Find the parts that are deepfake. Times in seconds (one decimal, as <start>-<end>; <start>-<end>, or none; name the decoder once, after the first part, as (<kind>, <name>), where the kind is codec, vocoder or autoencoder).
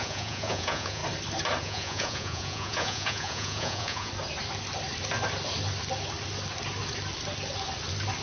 0.0-1.0 (vocoder, Vocos); 1.6-4.1